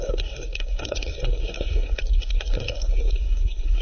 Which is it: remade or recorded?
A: remade